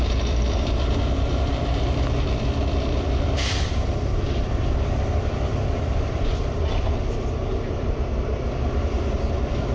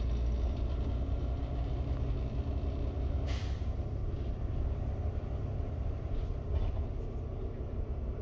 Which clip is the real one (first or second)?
second